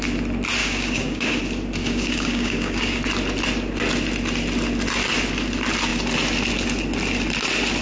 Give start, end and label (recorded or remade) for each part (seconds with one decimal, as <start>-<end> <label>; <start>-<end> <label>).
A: 0.0-0.6 recorded; 0.6-1.4 remade; 1.4-1.8 recorded; 1.8-3.0 remade; 3.0-7.8 recorded